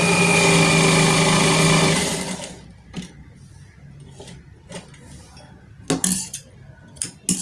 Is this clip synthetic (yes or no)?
no